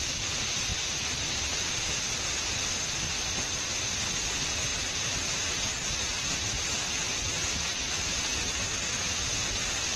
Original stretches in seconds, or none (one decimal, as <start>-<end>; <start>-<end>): 0.0-0.7; 2.6-4.7; 8.7-10.0